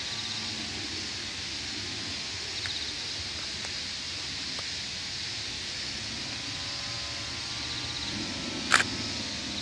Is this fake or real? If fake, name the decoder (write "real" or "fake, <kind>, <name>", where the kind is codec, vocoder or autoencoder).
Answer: real